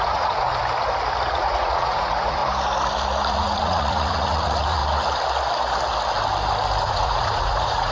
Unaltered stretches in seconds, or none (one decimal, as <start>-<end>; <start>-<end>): 0.5-1.3; 2.4-3.3; 4.8-6.8